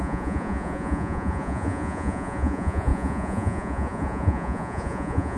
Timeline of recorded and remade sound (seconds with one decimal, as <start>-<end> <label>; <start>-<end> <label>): 0.0-5.4 remade